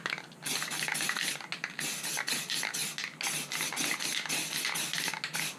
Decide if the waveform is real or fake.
real